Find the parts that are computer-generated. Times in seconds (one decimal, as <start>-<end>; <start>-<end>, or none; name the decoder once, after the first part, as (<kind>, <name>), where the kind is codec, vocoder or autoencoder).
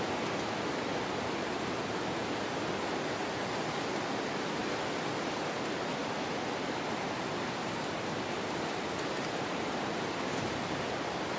none